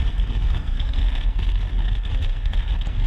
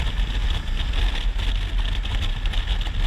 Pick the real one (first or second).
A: second